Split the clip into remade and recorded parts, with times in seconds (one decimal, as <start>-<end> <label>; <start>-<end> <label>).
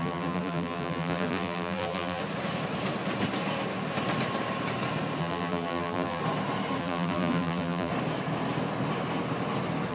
0.0-2.2 remade; 2.2-5.2 recorded; 5.2-6.2 remade; 6.2-6.8 recorded; 6.8-7.9 remade; 7.9-9.9 recorded